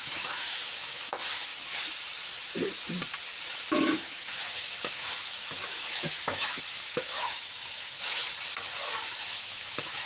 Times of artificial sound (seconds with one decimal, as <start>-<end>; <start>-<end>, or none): 0.0-1.5; 3.7-8.2; 9.2-10.1